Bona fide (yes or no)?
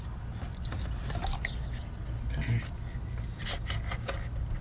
yes